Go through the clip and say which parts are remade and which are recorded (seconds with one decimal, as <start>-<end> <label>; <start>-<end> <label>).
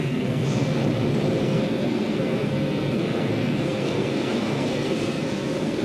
0.0-0.8 remade; 0.8-1.4 recorded; 1.4-5.8 remade